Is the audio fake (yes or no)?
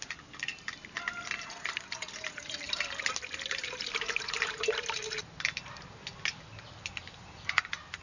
no